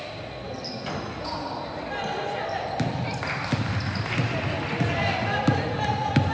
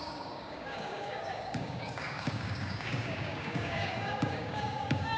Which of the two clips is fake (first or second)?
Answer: second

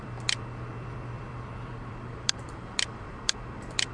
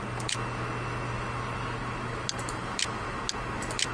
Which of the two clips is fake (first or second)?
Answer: first